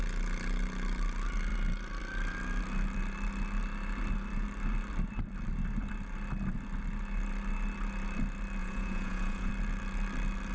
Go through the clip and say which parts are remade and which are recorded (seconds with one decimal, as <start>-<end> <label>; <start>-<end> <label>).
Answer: 0.0-8.6 recorded; 8.6-9.5 remade; 9.5-10.5 recorded